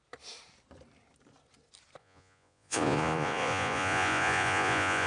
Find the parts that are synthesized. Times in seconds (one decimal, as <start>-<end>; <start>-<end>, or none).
2.0-5.1